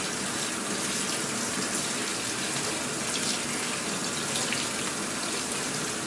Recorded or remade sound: recorded